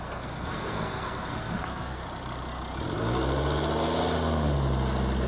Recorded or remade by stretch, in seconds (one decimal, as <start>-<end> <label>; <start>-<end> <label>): 0.0-2.0 remade; 2.0-5.3 recorded